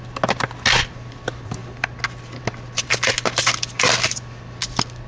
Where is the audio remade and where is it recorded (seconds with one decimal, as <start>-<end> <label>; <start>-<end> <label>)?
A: 0.0-5.1 recorded